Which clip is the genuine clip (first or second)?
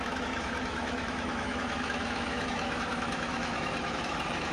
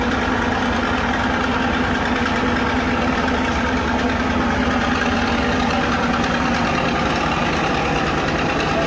second